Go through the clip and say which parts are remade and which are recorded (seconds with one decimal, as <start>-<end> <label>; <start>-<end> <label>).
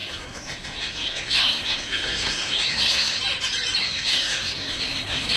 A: 0.0-3.2 remade; 3.2-3.8 recorded; 3.8-5.4 remade